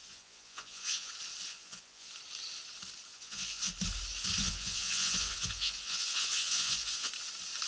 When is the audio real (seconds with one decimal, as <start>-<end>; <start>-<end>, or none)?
1.1-1.5; 2.1-3.1; 3.6-4.4; 7.1-7.7